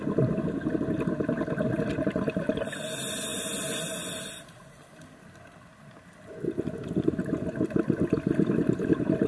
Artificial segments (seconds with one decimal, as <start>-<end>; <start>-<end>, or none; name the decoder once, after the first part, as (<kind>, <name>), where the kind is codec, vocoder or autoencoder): none